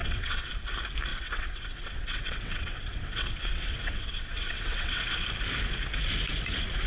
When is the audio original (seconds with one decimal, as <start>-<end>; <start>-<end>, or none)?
0.5-1.1; 5.2-6.9